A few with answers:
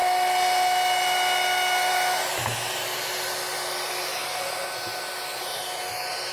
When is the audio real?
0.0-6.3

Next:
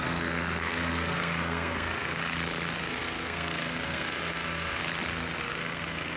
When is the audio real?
2.2-2.8; 4.8-5.4

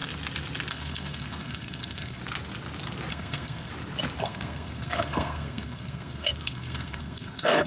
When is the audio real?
0.0-0.7; 2.2-3.1; 3.7-4.2